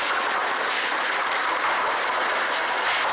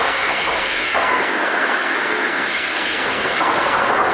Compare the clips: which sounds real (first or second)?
first